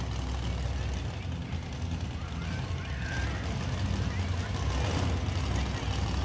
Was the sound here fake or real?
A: real